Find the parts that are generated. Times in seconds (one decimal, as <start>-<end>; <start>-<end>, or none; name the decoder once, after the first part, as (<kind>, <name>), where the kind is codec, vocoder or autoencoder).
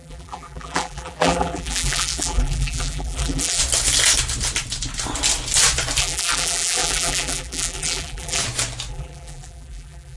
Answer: 0.0-3.6 (vocoder, BigVGAN v2); 6.0-8.4; 8.9-10.2